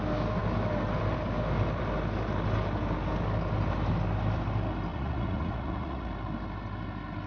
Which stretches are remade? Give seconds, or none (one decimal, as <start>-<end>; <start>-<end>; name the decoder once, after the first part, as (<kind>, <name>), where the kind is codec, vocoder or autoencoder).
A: 4.9-6.1 (vocoder, Vocos)